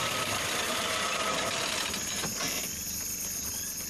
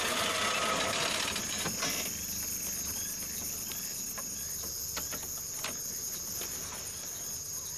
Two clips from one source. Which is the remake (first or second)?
first